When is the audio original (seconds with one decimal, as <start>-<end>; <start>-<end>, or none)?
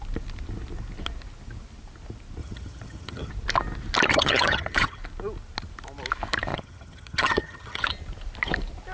0.0-2.4; 3.3-4.1; 5.0-6.5; 7.9-8.9